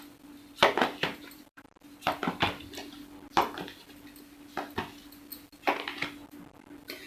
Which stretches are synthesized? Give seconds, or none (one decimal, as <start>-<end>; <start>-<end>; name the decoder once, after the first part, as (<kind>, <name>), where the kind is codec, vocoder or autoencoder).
1.0-1.6 (vocoder, BigVGAN v2)